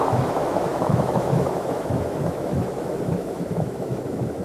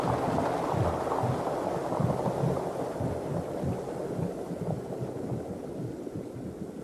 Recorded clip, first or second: second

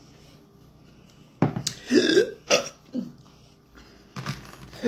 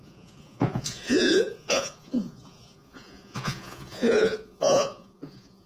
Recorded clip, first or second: first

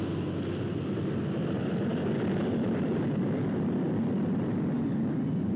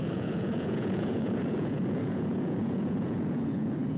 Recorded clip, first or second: first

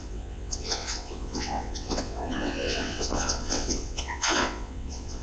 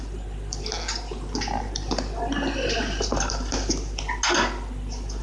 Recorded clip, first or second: second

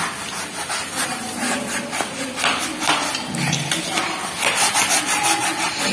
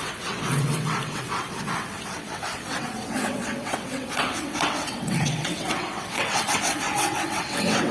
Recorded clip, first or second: first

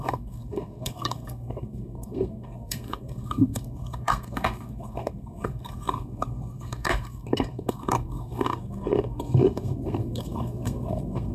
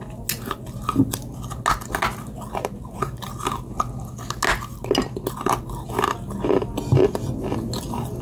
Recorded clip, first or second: second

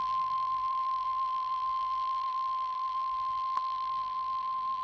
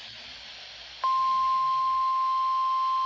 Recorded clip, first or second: second